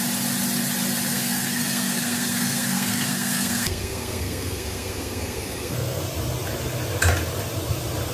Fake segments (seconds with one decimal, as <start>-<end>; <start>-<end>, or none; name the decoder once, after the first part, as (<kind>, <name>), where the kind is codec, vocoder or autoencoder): 1.1-6.0 (codec, SNAC)